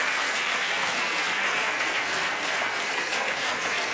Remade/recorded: remade